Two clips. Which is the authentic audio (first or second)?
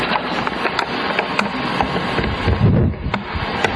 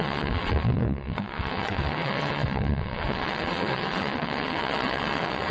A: first